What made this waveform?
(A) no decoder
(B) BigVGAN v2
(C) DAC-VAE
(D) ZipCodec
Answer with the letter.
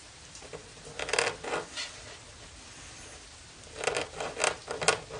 A